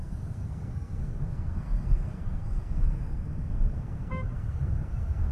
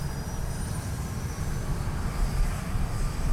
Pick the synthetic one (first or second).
first